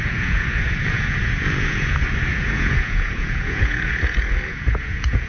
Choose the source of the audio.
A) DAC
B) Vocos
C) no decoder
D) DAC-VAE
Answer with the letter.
B